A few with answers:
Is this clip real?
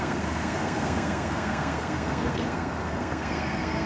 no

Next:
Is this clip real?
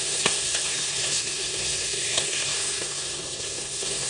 no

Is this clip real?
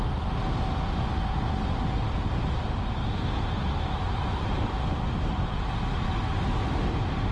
yes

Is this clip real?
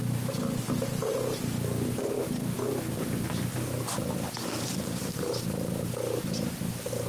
yes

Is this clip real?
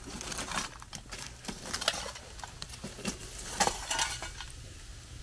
yes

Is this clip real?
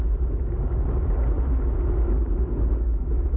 yes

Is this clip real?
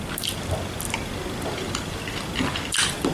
yes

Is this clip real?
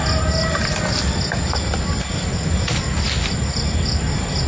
yes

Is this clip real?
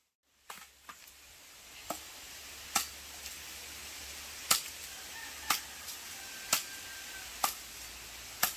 yes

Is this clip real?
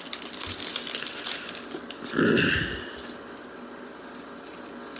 yes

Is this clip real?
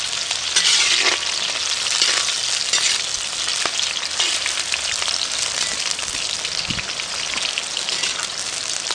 yes